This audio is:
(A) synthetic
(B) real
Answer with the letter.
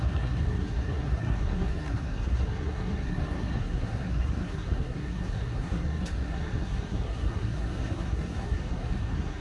A